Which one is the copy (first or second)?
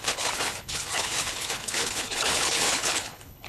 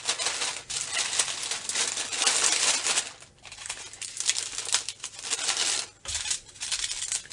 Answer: first